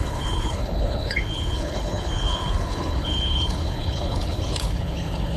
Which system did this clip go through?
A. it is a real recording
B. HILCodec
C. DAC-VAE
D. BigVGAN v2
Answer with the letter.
B